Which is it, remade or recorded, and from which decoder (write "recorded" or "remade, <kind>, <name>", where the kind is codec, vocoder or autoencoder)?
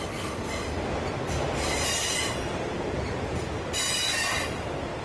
recorded